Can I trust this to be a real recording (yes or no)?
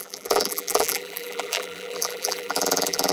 no